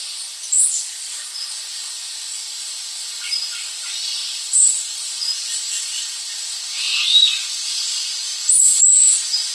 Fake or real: real